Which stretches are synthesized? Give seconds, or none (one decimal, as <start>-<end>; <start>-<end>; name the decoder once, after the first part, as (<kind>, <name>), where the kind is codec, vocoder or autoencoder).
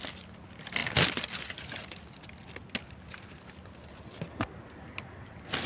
none